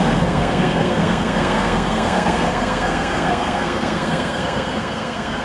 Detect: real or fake fake